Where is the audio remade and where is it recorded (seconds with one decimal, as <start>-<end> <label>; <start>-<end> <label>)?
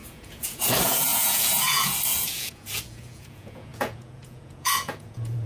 0.0-5.5 remade